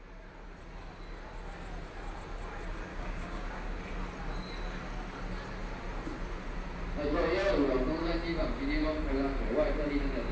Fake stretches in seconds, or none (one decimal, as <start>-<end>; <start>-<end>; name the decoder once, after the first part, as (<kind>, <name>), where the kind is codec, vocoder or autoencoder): 2.9-3.8 (codec, DAC)